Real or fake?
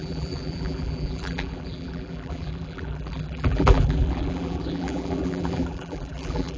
fake